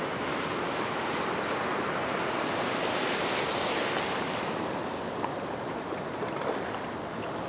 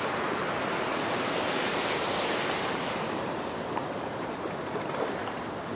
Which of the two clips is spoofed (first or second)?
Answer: second